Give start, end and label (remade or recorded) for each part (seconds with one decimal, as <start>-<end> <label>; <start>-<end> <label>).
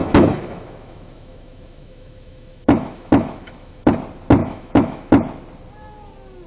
0.0-3.9 remade; 3.9-4.4 recorded; 4.4-5.1 remade; 5.1-6.5 recorded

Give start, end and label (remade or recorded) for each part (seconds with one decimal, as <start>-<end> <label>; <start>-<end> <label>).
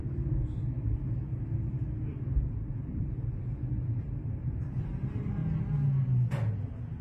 0.0-3.0 recorded; 3.0-5.4 remade; 5.4-7.0 recorded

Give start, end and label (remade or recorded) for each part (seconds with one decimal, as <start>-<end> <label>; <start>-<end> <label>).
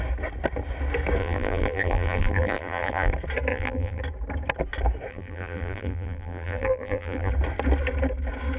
0.0-1.2 recorded; 1.2-3.1 remade; 3.1-3.5 recorded; 3.5-4.0 remade; 4.0-5.1 recorded; 5.1-7.3 remade; 7.3-8.6 recorded